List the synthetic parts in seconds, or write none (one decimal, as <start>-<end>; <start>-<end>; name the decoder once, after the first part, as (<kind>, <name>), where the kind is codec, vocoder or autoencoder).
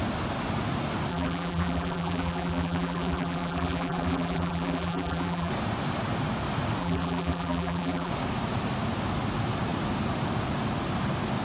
1.1-5.5 (vocoder, BigVGAN v2); 6.8-8.1